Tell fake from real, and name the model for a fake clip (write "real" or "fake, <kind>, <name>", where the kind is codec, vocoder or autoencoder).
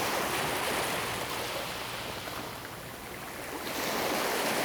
real